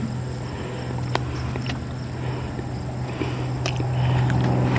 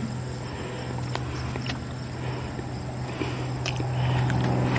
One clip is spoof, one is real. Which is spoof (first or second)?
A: first